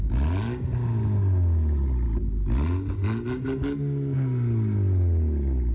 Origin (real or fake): real